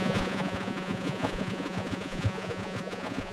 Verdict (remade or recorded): remade